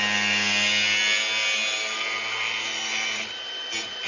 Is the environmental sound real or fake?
real